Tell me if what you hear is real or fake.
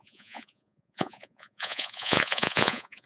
fake